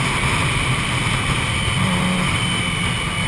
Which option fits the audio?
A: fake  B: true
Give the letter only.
B